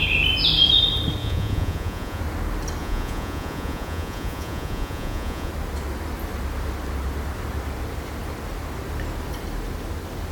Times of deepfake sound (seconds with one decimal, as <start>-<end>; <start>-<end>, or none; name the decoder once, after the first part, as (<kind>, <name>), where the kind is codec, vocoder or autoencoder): 1.2-2.2 (vocoder, Vocos); 2.8-5.5